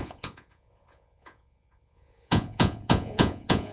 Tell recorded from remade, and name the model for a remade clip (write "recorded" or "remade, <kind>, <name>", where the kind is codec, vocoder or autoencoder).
remade, vocoder, Vocos